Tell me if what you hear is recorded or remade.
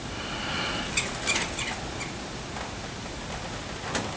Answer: recorded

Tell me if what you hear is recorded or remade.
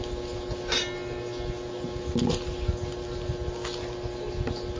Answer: recorded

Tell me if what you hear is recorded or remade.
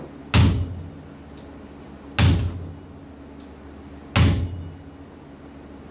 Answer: recorded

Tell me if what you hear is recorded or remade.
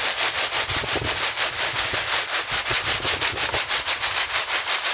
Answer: recorded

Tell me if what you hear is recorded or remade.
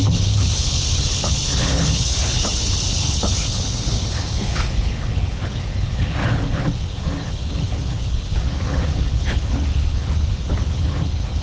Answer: remade